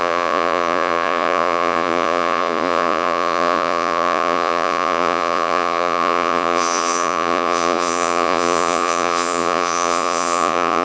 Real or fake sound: fake